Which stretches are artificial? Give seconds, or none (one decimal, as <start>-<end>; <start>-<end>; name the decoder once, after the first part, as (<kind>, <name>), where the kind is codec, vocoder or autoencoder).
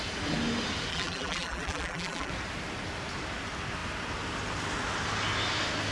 0.9-2.3 (vocoder, BigVGAN v2)